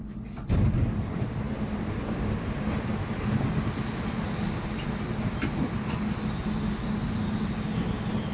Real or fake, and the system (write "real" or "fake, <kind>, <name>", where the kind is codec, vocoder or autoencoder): real